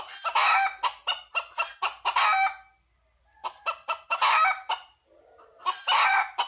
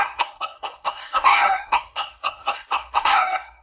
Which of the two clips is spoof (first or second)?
second